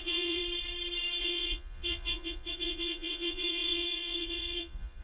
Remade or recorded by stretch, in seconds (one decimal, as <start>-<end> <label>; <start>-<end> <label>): 0.0-0.4 remade; 0.4-1.2 recorded; 1.2-5.0 remade